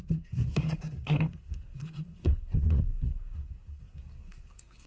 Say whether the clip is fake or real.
fake